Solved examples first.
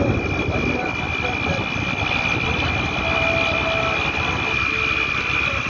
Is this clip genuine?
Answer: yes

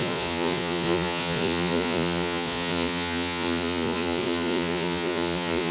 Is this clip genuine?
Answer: no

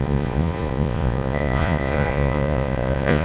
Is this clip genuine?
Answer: no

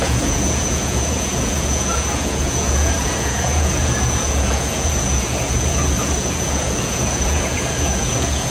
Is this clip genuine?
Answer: no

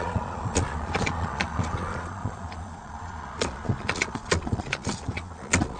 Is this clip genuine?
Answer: no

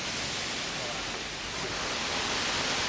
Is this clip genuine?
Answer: yes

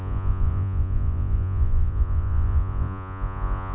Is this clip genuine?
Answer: no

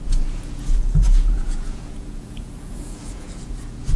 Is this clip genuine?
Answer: no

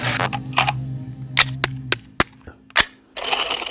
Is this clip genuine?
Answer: yes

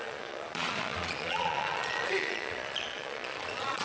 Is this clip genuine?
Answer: no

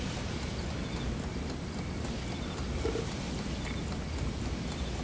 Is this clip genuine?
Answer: yes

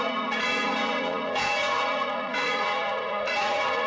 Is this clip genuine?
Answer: no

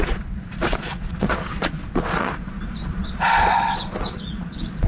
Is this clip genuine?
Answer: no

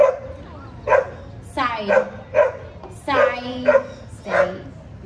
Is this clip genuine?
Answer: yes